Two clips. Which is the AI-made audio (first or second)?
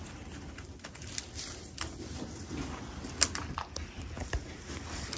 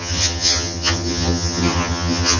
second